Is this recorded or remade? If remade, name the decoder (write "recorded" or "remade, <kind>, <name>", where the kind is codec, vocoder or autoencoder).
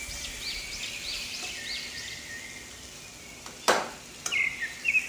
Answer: recorded